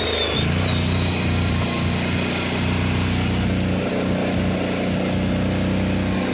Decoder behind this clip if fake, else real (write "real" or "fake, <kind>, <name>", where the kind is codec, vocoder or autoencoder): real